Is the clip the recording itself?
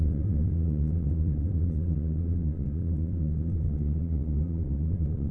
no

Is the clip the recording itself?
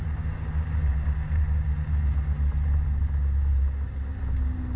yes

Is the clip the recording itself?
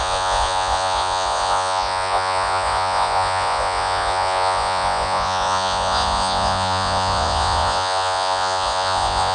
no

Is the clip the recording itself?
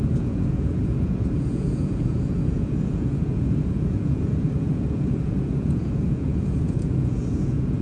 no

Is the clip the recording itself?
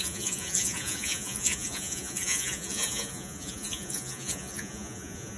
no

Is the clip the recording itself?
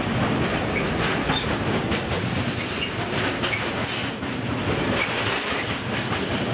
yes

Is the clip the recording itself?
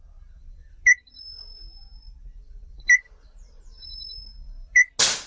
yes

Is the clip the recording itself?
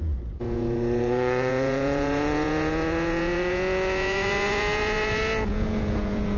no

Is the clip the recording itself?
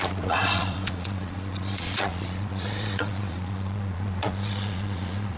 no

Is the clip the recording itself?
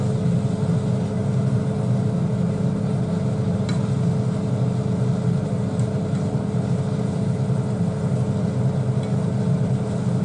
yes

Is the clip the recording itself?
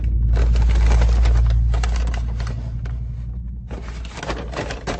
yes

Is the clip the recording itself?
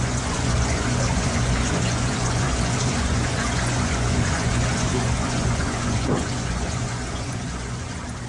no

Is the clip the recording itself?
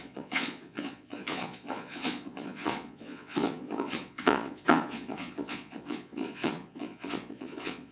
no